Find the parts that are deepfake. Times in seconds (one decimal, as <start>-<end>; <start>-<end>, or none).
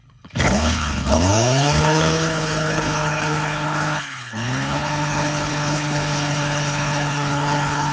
0.0-7.9